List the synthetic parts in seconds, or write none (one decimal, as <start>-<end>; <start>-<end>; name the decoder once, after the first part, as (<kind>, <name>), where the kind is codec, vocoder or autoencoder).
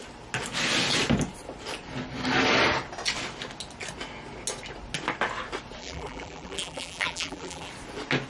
5.8-7.7 (vocoder, BigVGAN v2)